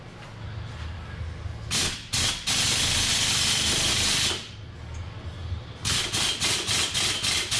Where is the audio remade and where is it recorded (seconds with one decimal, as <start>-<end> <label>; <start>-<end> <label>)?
0.0-5.4 recorded; 5.4-6.7 remade; 6.7-7.6 recorded